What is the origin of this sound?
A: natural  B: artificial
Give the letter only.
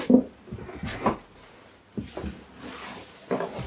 A